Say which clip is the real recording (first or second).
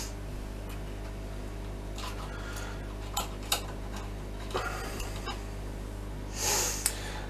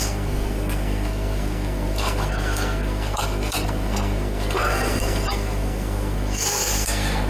first